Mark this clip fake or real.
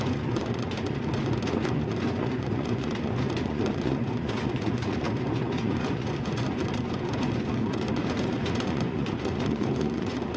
fake